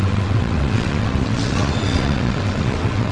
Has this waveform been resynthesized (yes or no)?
yes